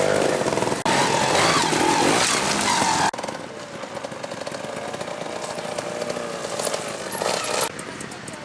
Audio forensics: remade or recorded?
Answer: recorded